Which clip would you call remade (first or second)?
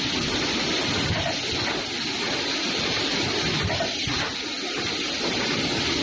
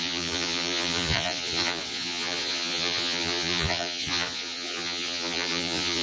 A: second